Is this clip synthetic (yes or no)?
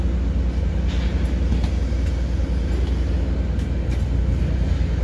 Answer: no